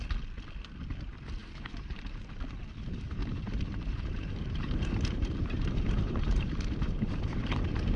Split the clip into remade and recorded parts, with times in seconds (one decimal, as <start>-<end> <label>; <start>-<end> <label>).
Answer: 0.0-1.4 recorded; 1.4-2.2 remade; 2.2-3.2 recorded; 3.2-8.0 remade